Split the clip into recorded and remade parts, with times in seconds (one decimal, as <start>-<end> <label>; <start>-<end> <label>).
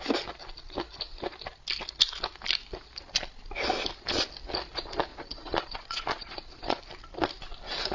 0.0-5.1 recorded; 5.1-6.8 remade; 6.8-7.9 recorded